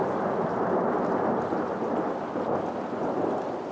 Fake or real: real